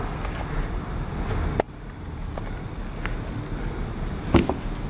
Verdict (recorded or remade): recorded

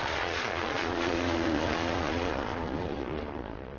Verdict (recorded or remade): remade